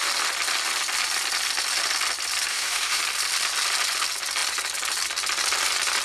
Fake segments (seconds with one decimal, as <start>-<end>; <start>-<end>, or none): 2.5-3.0